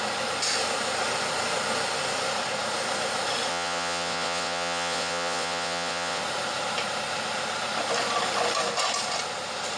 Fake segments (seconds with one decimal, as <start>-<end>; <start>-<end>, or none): 3.5-6.2

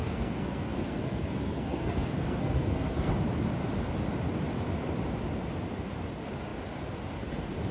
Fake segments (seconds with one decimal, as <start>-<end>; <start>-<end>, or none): 0.0-3.1

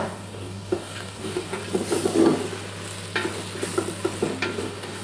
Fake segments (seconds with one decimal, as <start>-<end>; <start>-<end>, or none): 0.0-1.6; 4.6-5.0

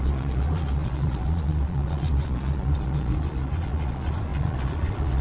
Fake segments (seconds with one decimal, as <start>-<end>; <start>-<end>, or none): 0.0-5.2

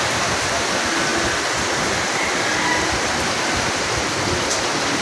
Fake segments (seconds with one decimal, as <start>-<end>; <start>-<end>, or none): none

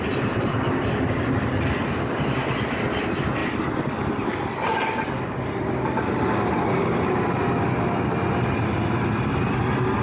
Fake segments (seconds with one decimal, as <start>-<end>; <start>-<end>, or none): none

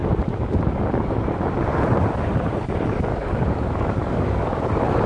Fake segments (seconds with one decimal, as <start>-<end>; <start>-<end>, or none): 3.1-4.6

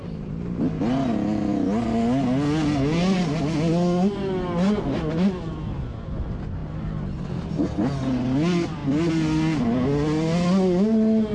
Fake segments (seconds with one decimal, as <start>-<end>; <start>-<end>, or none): none